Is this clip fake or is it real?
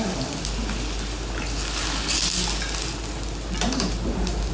real